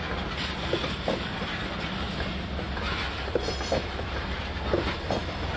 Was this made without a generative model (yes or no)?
yes